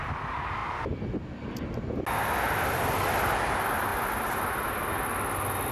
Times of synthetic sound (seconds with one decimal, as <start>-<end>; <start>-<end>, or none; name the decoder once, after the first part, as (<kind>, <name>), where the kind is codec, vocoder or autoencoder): none